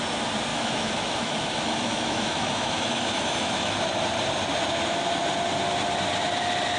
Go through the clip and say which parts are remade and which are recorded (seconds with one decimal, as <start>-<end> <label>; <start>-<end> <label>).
0.0-0.5 recorded; 0.5-3.7 remade; 3.7-6.8 recorded